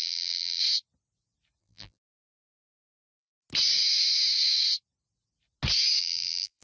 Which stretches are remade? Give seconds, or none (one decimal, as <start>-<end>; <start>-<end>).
0.0-0.6; 1.6-3.3; 6.0-6.6